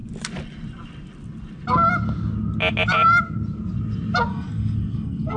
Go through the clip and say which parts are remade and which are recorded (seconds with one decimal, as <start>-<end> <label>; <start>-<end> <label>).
0.0-4.3 recorded; 4.3-5.4 remade